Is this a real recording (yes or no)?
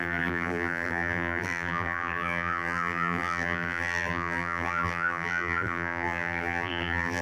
no